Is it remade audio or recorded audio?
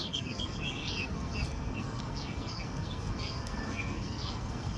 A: remade